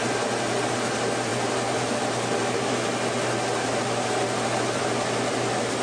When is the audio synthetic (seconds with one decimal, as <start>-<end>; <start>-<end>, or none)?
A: none